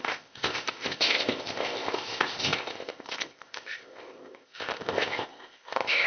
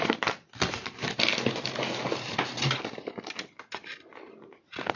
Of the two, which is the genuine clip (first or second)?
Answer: second